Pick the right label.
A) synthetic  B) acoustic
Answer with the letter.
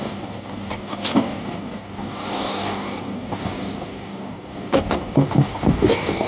A